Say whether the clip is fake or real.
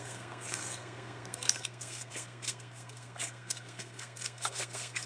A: fake